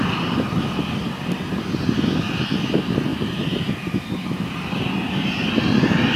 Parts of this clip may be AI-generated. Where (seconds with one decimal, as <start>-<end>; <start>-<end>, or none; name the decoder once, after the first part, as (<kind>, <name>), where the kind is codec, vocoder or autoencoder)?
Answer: none

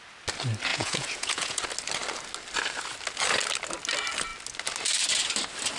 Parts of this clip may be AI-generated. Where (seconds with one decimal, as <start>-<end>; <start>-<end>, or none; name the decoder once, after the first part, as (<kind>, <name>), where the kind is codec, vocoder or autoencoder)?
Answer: 0.7-1.6 (vocoder, Vocos)